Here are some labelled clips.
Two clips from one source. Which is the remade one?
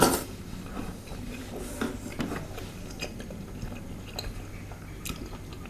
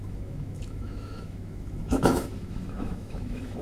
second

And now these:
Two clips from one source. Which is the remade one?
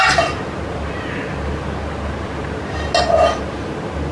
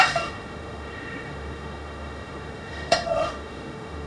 second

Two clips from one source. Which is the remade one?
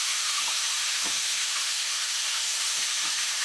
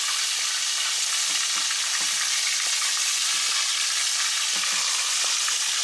first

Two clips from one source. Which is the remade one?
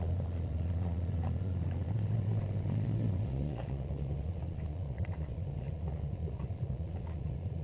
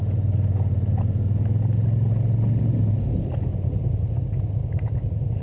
first